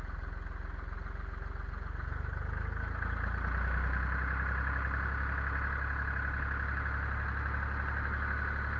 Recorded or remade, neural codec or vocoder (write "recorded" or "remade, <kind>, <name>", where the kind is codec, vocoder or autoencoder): recorded